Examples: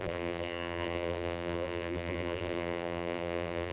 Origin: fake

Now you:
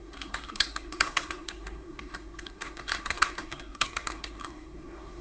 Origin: fake